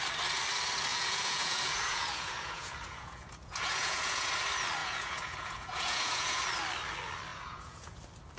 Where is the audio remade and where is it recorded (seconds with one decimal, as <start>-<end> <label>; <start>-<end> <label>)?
0.0-0.9 recorded; 0.9-4.3 remade; 4.3-4.8 recorded; 4.8-6.4 remade; 6.4-7.3 recorded; 7.3-8.0 remade; 8.0-8.4 recorded